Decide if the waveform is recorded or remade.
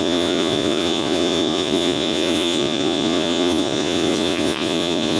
remade